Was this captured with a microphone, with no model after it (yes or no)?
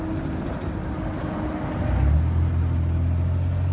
yes